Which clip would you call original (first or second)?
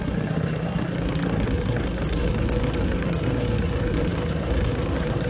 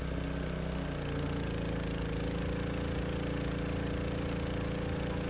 second